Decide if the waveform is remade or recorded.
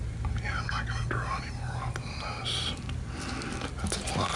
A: recorded